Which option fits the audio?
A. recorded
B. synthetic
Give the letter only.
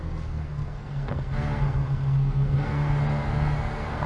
B